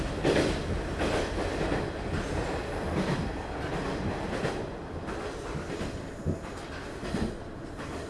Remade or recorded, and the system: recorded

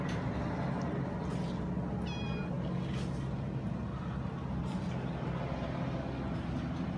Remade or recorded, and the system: recorded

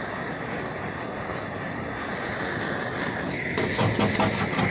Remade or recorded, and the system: recorded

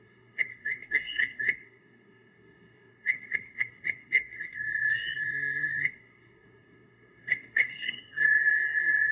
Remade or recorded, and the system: remade, codec, SNAC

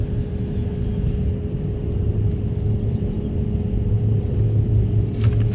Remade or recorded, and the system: recorded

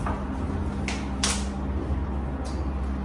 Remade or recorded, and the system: recorded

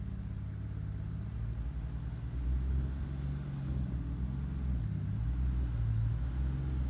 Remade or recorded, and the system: recorded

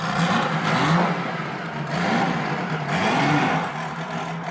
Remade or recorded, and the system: recorded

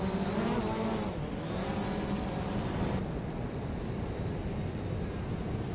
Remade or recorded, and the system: recorded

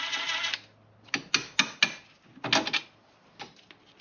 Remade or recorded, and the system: recorded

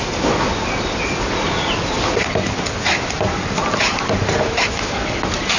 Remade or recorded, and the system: recorded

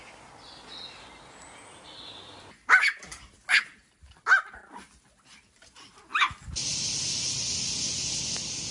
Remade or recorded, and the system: recorded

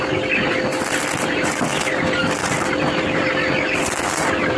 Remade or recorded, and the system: recorded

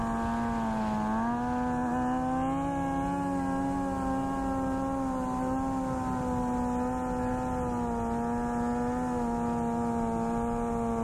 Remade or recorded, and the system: recorded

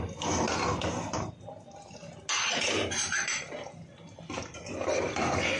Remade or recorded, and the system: recorded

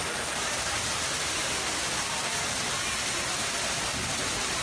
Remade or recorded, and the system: recorded